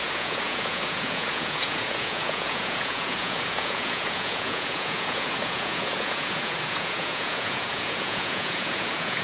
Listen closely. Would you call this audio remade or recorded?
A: remade